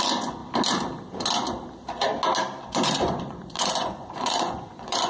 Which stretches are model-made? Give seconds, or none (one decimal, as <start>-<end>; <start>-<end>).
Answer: 0.0-0.4; 2.6-5.1